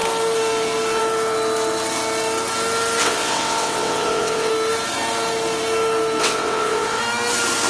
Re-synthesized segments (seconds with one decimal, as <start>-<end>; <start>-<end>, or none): 3.0-4.5; 6.2-7.0